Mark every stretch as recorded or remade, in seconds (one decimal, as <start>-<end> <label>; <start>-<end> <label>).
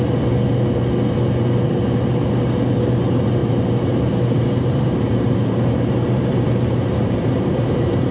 0.0-3.4 recorded; 3.4-8.1 remade